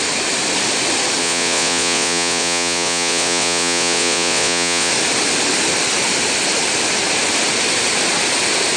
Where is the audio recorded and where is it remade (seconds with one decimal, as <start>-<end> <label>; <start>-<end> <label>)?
0.0-1.2 recorded; 1.2-4.9 remade; 4.9-8.8 recorded